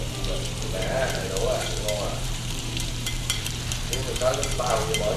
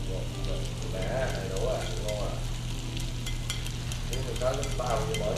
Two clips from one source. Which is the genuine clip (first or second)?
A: second